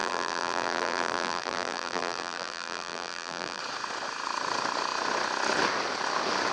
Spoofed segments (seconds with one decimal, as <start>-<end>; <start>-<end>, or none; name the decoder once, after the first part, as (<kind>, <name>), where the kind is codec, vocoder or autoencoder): 0.0-3.6 (vocoder, BigVGAN v2)